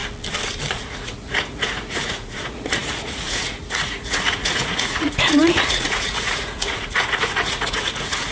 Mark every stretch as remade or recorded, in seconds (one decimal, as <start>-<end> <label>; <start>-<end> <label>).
0.0-0.7 recorded; 0.7-8.3 remade